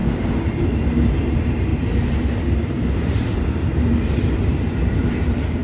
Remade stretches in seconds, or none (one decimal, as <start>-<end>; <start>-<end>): 0.0-5.6